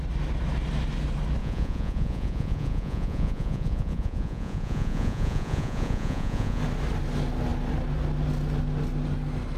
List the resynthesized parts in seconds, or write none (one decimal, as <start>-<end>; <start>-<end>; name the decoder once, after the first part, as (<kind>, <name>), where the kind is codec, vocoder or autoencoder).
1.4-6.6 (vocoder, Vocos)